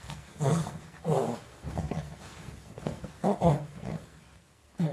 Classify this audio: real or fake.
fake